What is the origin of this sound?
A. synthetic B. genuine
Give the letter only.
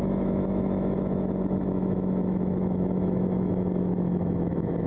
A